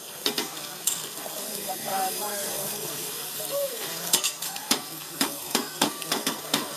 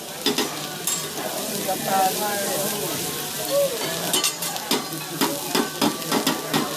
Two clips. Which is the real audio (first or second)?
second